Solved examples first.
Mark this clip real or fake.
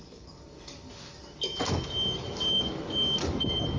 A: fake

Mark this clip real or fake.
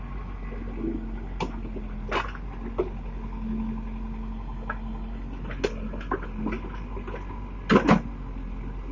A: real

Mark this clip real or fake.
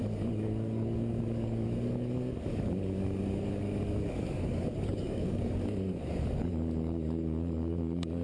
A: fake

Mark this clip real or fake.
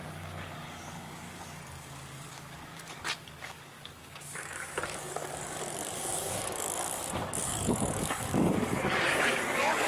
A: fake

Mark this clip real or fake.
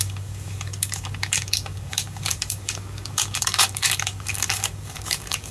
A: fake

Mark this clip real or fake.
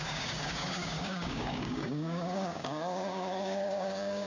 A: fake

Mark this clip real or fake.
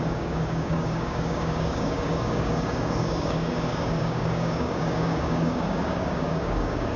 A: fake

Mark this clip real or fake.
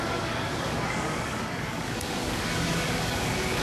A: fake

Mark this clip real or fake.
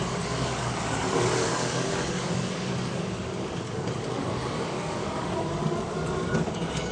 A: fake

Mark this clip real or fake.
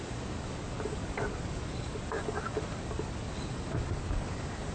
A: fake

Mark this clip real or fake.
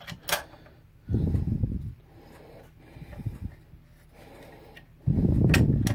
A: real